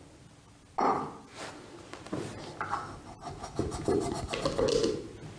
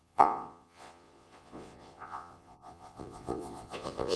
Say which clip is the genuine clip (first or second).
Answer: first